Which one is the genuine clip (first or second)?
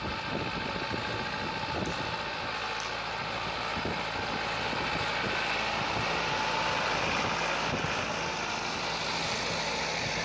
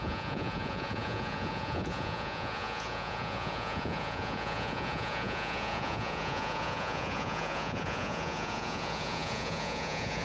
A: first